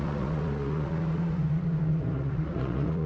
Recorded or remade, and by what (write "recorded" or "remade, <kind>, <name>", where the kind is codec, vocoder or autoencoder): remade, vocoder, Vocos